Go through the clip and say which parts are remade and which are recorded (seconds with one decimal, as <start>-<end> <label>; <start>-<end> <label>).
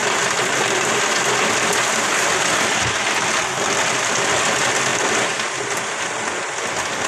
0.0-7.1 recorded